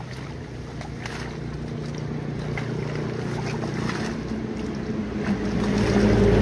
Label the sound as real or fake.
real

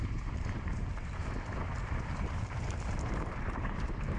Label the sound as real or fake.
fake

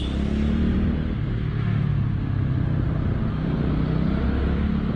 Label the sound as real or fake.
real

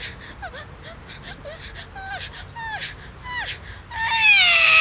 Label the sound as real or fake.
real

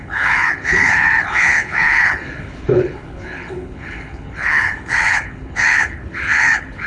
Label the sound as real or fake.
fake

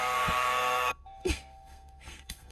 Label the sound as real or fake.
fake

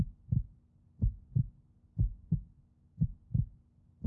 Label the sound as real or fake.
real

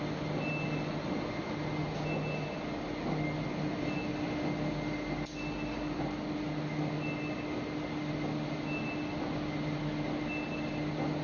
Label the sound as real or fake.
real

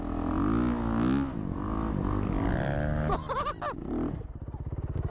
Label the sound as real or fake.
real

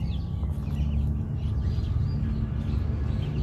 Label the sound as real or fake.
real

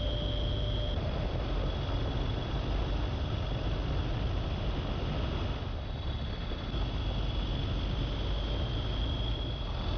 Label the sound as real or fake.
real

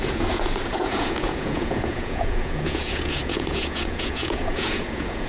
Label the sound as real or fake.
fake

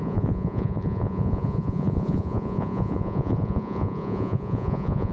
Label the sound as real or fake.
fake